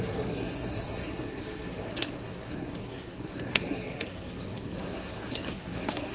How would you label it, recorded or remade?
remade